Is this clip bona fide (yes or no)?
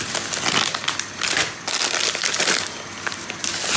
yes